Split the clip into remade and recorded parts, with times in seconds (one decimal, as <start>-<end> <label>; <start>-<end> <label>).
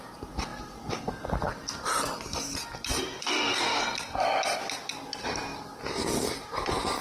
0.0-3.2 recorded; 3.2-3.8 remade; 3.8-7.0 recorded